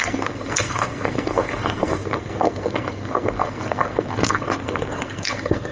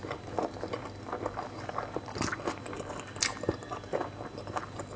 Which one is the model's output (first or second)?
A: first